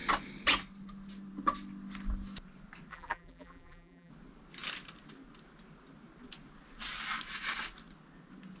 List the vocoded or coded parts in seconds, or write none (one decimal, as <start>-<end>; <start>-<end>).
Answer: 2.9-4.1